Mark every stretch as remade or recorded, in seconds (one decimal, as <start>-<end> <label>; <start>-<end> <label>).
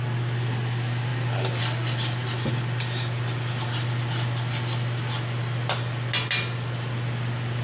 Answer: 0.0-7.6 recorded